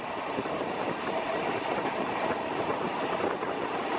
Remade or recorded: recorded